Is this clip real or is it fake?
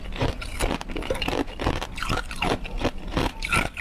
real